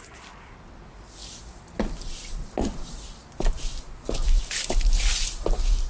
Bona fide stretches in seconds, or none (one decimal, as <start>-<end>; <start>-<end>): 0.0-5.9